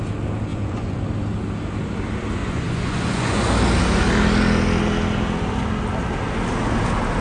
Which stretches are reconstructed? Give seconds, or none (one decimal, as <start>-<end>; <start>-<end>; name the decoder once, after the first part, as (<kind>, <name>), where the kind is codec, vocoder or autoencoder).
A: 0.5-1.0 (vocoder, Vocos); 2.4-3.4